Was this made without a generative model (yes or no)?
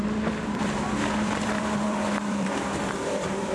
no